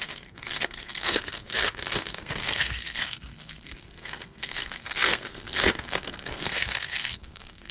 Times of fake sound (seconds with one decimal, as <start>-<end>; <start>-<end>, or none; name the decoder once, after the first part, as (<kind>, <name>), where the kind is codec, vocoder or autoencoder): 0.0-7.7 (codec, SNAC)